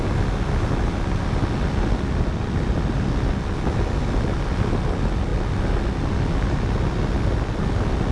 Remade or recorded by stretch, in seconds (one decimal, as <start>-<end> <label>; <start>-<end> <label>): 0.0-8.1 recorded